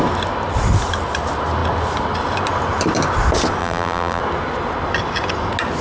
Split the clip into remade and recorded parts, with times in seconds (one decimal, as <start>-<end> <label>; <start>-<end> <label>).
0.0-3.6 recorded; 3.6-4.2 remade; 4.2-5.8 recorded